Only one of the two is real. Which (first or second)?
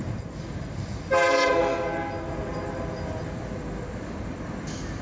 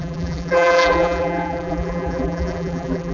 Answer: first